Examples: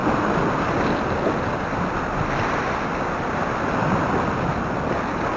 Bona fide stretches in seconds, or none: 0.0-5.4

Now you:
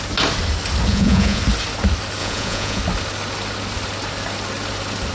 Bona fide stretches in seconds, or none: 0.0-0.9; 1.4-2.2; 2.8-5.1

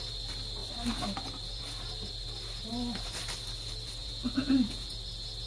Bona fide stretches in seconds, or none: 0.0-4.0; 4.9-5.5

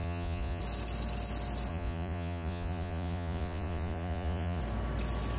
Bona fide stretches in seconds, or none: 0.6-1.7; 4.6-5.4

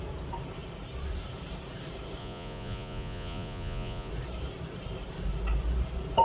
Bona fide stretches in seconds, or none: 0.0-2.2; 4.1-6.2

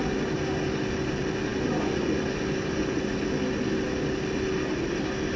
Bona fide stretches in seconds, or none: 0.0-5.4